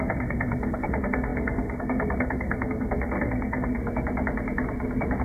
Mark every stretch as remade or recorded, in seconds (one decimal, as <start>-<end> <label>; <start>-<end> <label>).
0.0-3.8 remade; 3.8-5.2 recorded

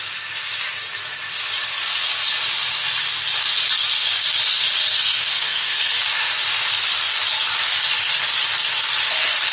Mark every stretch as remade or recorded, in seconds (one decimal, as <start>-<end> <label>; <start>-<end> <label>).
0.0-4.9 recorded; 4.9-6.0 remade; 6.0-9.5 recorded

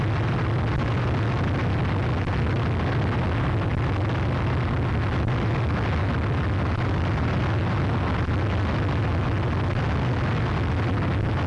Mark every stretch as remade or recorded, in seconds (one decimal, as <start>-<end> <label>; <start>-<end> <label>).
0.0-11.5 recorded